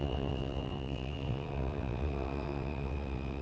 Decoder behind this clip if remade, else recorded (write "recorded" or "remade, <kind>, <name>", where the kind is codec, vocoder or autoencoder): remade, vocoder, WaveNeXt